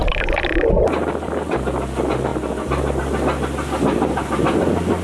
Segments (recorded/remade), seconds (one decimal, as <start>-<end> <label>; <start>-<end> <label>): 0.0-1.3 remade; 1.3-5.0 recorded

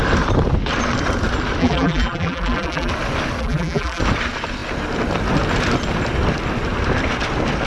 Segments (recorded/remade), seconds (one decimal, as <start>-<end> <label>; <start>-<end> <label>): 0.0-1.6 recorded; 1.6-2.9 remade; 2.9-3.4 recorded; 3.4-4.0 remade; 4.0-7.7 recorded